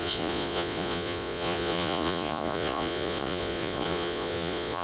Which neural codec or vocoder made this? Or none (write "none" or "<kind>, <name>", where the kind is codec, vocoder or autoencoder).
vocoder, Vocos